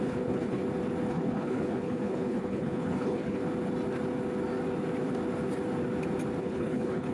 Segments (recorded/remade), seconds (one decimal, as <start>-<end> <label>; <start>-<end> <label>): 0.0-0.6 remade; 0.6-1.1 recorded; 1.1-3.4 remade; 3.4-6.4 recorded; 6.4-7.1 remade